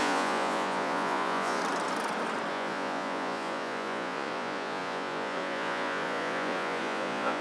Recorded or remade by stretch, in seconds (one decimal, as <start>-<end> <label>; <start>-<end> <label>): 0.0-1.6 remade; 1.6-2.5 recorded; 2.5-7.4 remade